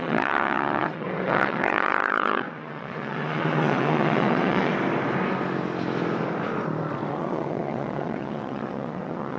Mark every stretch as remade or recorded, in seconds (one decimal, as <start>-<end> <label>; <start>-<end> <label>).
0.0-4.7 remade; 4.7-7.1 recorded; 7.1-9.4 remade